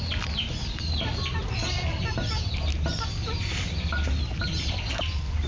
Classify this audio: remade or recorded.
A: recorded